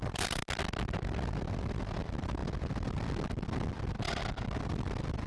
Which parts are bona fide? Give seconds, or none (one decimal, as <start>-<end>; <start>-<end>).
0.0-5.3